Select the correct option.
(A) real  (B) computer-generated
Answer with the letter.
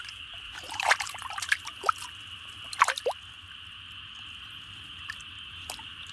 A